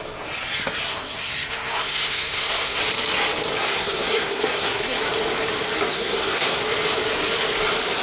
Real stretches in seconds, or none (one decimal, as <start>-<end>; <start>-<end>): 0.0-0.9; 2.8-3.6; 5.0-5.9; 6.6-8.0